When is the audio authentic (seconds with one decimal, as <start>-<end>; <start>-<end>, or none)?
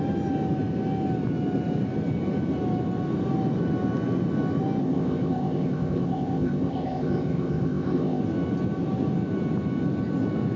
0.0-4.8; 8.2-10.6